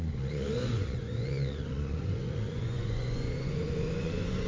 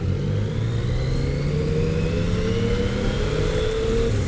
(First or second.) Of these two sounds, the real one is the second